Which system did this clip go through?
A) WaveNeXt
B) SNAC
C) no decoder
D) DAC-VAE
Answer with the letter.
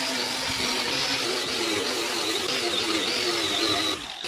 C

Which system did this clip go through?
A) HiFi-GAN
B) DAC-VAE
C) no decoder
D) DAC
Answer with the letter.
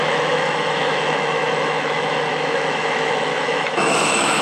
B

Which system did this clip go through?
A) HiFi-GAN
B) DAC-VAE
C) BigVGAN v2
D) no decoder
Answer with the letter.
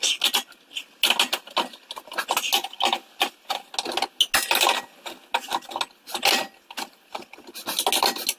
D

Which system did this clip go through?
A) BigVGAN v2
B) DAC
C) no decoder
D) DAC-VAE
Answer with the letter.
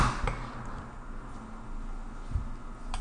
C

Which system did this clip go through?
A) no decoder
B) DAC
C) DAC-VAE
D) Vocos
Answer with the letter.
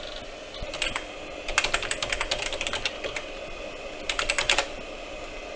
A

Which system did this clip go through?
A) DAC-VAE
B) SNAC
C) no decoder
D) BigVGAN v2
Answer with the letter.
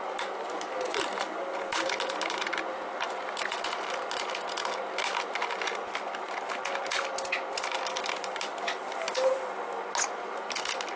C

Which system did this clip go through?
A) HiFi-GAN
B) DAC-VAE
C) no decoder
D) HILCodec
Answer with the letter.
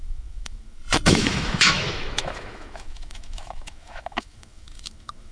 B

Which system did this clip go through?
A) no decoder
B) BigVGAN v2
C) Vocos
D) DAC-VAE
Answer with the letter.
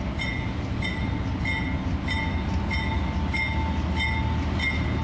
A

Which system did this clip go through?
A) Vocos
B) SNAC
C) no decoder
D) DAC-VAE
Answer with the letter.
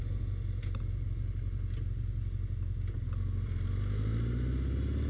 C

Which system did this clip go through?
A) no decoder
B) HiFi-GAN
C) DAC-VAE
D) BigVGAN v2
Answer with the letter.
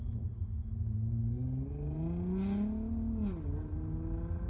A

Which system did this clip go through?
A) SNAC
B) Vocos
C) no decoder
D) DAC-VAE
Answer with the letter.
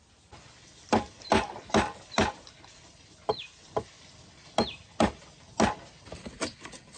C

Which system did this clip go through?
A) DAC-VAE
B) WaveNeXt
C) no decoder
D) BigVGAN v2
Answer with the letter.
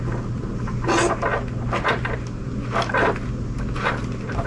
C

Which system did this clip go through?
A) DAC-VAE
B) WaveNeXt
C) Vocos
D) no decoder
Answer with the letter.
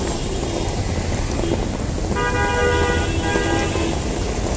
D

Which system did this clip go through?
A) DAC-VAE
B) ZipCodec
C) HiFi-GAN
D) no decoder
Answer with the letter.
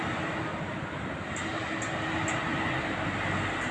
D